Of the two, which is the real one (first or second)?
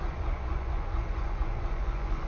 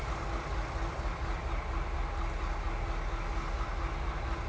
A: second